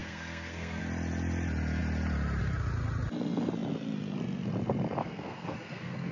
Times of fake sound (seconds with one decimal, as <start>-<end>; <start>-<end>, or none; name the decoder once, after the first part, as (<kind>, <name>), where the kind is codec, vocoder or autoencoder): 0.0-0.8 (codec, SNAC); 5.0-6.1